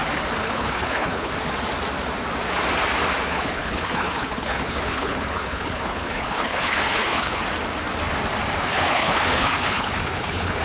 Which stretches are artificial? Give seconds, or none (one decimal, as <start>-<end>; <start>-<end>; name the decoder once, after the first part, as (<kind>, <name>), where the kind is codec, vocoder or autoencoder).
0.4-1.3 (codec, HILCodec); 3.3-7.4; 8.6-10.6

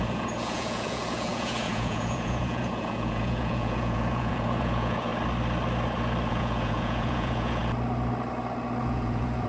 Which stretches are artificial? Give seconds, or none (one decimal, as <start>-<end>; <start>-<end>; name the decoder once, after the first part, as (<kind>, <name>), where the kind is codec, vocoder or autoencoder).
0.0-5.1 (vocoder, Vocos); 6.3-7.6; 8.8-9.5

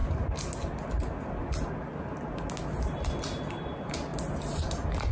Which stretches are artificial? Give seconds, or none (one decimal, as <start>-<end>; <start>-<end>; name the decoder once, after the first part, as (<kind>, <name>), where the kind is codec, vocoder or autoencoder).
none

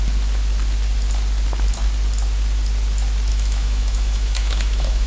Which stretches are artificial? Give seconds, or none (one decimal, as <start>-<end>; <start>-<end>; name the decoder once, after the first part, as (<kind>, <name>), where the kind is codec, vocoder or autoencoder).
3.3-5.1 (autoencoder, DAC-VAE)

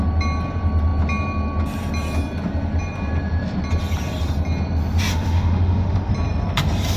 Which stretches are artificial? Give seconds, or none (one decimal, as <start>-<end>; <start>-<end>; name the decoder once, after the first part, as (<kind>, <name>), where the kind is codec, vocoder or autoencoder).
5.1-6.1 (autoencoder, DAC-VAE)

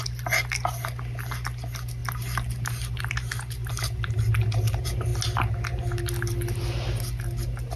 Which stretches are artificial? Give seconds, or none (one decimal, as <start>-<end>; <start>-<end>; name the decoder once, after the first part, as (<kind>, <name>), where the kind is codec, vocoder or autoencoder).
none